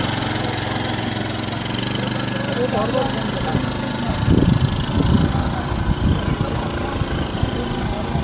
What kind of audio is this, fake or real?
real